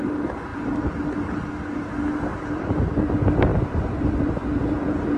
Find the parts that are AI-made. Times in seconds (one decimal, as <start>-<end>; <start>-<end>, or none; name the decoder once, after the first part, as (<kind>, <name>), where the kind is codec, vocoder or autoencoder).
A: 2.3-3.1 (vocoder, BigVGAN v2); 3.5-4.1